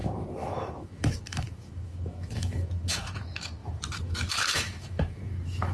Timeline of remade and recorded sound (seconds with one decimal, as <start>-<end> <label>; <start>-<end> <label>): 0.0-5.7 remade